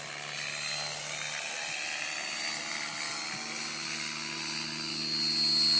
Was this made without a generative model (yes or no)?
yes